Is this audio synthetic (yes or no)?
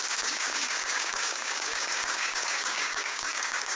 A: yes